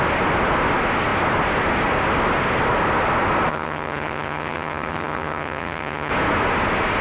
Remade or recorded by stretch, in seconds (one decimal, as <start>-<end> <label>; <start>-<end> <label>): 0.0-3.5 recorded; 3.5-6.1 remade; 6.1-7.0 recorded